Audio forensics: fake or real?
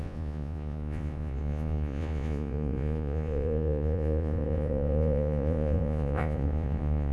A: fake